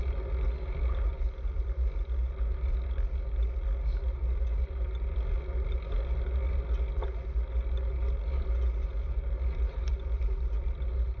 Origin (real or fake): real